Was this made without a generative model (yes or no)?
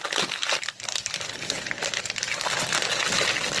no